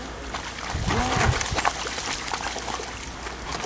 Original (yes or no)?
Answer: yes